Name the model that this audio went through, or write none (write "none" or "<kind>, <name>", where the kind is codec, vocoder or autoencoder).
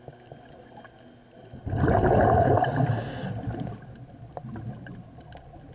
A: none